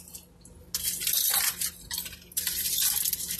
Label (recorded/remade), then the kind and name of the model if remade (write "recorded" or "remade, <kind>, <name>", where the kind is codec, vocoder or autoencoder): recorded